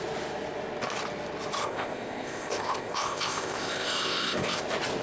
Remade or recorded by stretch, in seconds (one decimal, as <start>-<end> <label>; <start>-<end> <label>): 0.0-1.6 recorded; 1.6-4.6 remade; 4.6-5.0 recorded